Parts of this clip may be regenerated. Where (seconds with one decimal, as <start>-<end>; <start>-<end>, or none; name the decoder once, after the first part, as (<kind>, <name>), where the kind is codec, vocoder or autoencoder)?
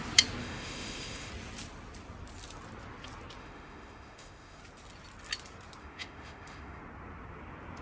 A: 0.4-1.3 (autoencoder, DAC-VAE); 3.4-4.6; 5.8-6.8